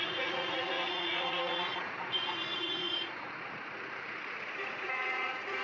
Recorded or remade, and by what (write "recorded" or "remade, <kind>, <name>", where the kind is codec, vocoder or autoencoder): remade, vocoder, Vocos